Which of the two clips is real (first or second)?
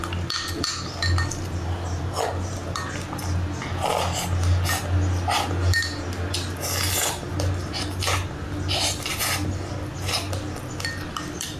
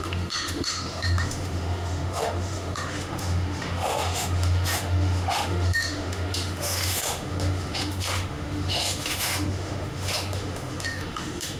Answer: first